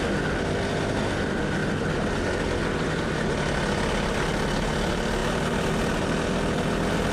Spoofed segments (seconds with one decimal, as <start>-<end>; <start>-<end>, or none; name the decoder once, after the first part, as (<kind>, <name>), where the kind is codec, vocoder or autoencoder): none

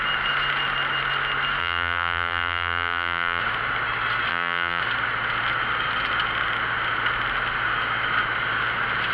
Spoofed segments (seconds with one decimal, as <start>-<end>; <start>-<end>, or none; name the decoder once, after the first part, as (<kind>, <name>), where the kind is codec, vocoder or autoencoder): 1.6-3.4 (vocoder, BigVGAN v2); 4.3-4.8

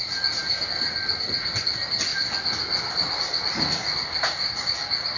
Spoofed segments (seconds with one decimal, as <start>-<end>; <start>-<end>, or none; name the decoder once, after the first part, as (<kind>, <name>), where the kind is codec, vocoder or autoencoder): none